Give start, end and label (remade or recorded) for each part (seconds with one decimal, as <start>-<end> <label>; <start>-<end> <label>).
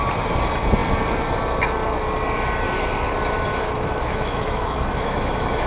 0.0-3.5 recorded; 3.5-5.7 remade